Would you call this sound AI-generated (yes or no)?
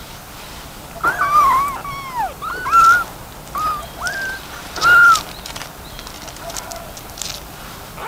no